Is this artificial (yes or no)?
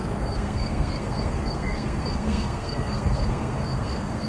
yes